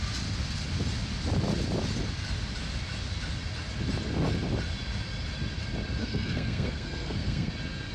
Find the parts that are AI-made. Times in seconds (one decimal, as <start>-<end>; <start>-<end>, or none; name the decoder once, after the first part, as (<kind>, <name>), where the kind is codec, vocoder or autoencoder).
6.0-7.5 (codec, SNAC)

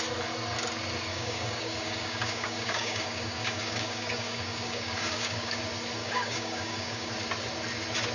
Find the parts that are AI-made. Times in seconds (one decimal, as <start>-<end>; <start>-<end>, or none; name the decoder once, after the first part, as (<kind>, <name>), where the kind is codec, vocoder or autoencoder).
1.1-5.6 (codec, DAC); 6.0-7.1